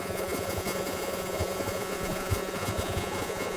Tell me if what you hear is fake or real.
fake